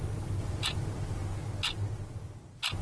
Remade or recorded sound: recorded